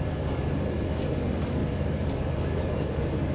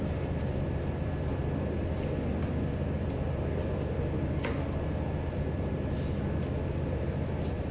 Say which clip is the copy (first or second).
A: first